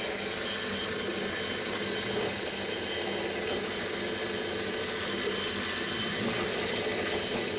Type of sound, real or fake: real